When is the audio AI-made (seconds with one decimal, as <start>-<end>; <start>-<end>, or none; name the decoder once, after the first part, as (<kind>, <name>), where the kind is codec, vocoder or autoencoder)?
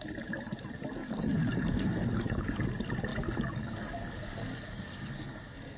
1.0-2.6 (codec, DAC); 3.1-5.8